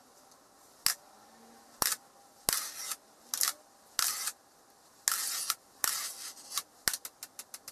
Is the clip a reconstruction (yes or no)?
no